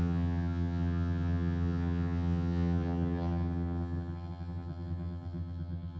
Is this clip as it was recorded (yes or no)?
no